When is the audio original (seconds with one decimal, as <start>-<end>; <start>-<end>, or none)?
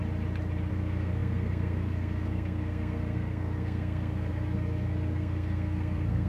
0.0-0.7